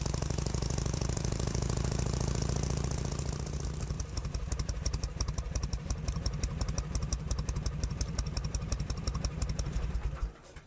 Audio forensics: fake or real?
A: fake